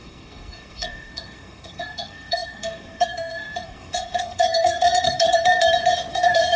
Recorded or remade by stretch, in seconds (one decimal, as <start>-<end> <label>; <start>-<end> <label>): 0.0-5.6 remade; 5.6-6.1 recorded; 6.1-6.6 remade